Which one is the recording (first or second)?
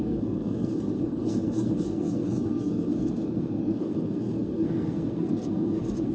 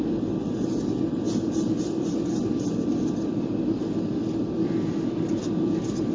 second